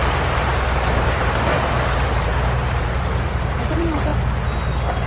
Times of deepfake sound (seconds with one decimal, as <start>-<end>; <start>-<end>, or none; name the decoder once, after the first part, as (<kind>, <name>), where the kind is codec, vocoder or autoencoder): 0.0-4.1 (vocoder, BigVGAN v2)